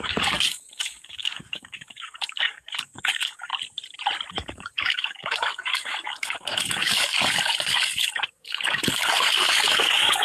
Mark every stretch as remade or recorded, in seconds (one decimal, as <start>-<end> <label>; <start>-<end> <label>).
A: 0.0-3.5 remade; 3.5-4.3 recorded; 4.3-10.2 remade